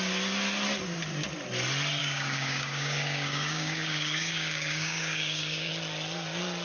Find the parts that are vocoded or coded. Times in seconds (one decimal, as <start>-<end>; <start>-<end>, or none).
2.0-5.7